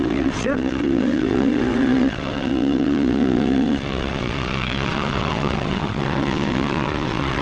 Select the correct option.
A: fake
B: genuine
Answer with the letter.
A